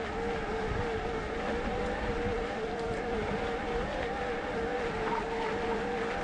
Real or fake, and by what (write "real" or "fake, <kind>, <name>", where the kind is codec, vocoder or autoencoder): real